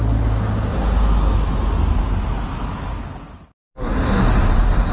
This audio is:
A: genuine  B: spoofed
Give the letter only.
A